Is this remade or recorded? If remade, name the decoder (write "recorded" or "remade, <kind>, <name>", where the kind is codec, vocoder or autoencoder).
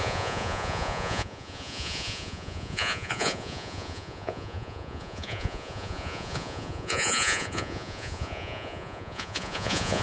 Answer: remade, vocoder, Vocos